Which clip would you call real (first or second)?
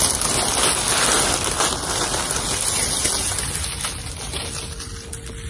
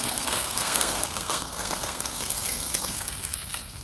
first